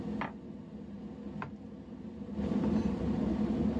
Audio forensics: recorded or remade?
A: recorded